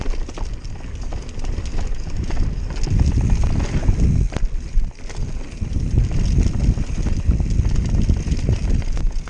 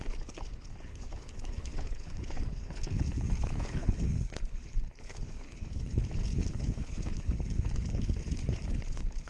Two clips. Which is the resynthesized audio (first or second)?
second